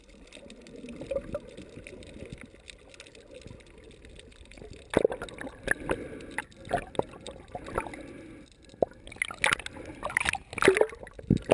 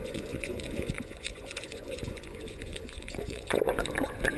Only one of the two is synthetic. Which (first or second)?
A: second